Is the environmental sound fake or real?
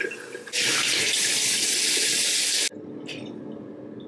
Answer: real